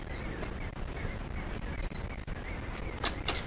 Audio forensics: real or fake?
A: real